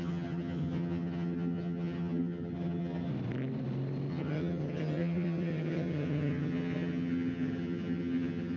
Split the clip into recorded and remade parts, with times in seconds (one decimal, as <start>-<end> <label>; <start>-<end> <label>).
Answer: 0.0-3.1 remade; 3.1-4.1 recorded; 4.1-8.6 remade